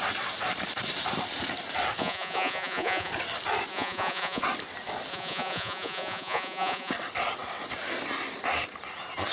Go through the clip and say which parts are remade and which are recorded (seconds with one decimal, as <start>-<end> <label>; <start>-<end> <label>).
0.0-2.0 recorded; 2.0-3.1 remade; 3.1-3.7 recorded; 3.7-4.4 remade; 4.4-5.1 recorded; 5.1-6.9 remade; 6.9-9.3 recorded